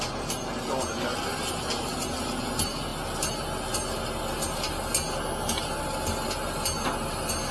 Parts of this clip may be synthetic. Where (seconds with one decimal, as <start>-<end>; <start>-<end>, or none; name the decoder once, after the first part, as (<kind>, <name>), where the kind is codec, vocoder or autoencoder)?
none